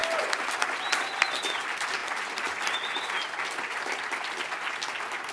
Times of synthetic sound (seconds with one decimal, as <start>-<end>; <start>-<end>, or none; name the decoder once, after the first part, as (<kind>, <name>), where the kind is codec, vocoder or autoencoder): 0.0-0.5 (vocoder, BigVGAN v2); 2.0-4.0